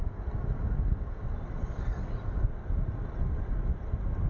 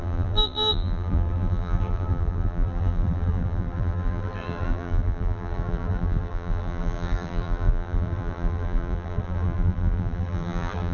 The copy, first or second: second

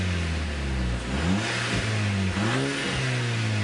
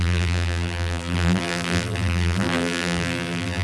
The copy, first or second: second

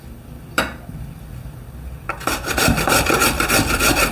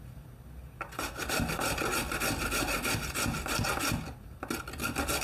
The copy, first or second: first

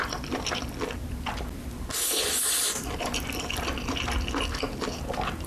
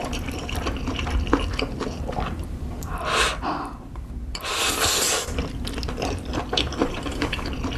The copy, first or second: second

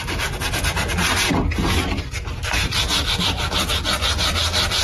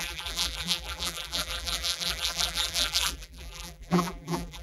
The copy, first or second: second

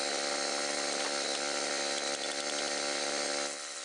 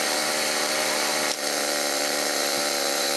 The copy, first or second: second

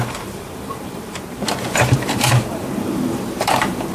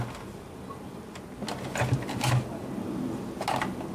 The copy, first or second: first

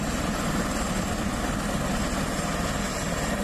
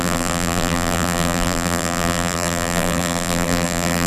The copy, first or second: second